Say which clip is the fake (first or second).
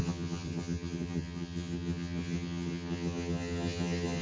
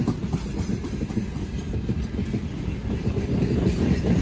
first